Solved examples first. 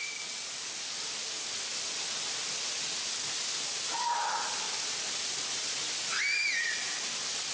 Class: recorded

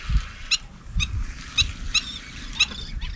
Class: recorded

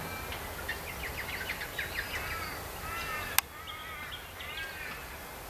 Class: recorded